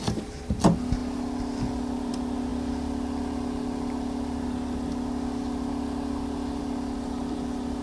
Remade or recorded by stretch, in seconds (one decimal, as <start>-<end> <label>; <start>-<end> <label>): 0.0-7.8 recorded

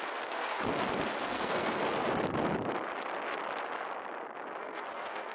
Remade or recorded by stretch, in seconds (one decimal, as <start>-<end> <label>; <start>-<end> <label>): 0.0-0.7 remade; 0.7-1.2 recorded; 1.2-1.8 remade; 1.8-4.6 recorded; 4.6-5.3 remade

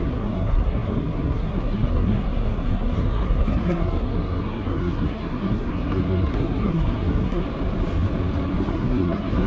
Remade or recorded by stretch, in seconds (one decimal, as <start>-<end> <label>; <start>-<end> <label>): 0.0-7.4 remade; 7.4-8.6 recorded; 8.6-9.5 remade

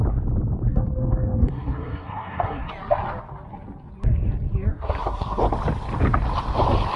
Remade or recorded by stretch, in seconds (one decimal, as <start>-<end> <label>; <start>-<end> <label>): 0.0-0.7 recorded; 0.7-2.7 remade; 2.7-4.7 recorded; 4.7-5.4 remade; 5.4-7.0 recorded

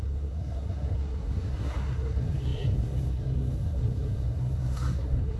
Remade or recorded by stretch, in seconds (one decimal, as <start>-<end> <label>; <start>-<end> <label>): 0.0-5.4 remade

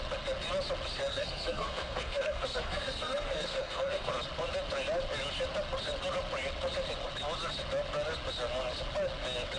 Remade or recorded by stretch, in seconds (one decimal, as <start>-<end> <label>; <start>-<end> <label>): 0.0-1.1 recorded; 1.1-4.1 remade; 4.1-9.6 recorded

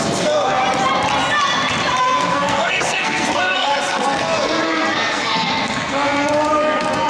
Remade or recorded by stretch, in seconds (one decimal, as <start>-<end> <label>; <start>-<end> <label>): 0.0-0.6 remade; 0.6-2.0 recorded; 2.0-7.1 remade

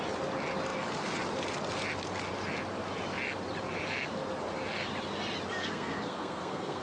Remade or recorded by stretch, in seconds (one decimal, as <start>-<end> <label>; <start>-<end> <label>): 0.0-5.6 recorded; 5.6-6.8 remade